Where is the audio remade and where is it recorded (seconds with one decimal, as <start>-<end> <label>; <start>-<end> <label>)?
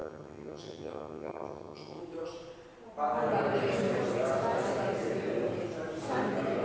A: 0.0-2.0 remade; 2.0-6.6 recorded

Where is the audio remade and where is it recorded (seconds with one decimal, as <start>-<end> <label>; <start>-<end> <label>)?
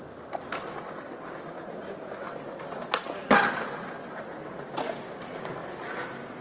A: 0.0-6.4 recorded